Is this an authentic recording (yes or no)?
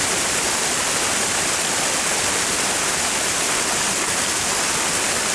yes